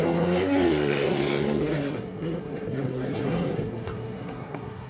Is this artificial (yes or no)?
yes